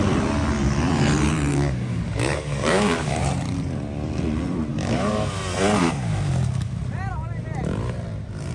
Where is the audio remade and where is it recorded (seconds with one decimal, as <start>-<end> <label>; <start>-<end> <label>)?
0.0-1.5 recorded; 1.5-3.2 remade; 3.2-4.7 recorded; 4.7-5.3 remade; 5.3-5.8 recorded; 5.8-6.8 remade; 6.8-8.5 recorded